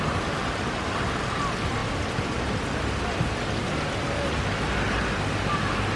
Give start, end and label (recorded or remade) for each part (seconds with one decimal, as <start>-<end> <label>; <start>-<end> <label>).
0.0-6.0 recorded